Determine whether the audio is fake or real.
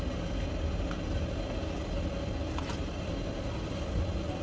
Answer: real